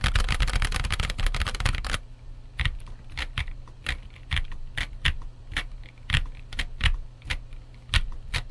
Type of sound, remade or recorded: recorded